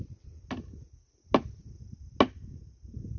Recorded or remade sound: recorded